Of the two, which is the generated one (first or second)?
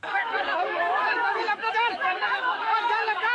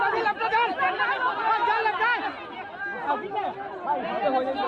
first